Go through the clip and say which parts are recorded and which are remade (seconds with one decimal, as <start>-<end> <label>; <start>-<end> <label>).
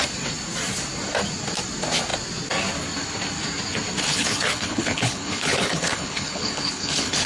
0.0-4.1 recorded; 4.1-7.3 remade